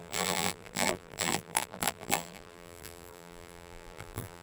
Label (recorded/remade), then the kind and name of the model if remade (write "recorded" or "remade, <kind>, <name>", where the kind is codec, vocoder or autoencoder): remade, vocoder, BigVGAN v2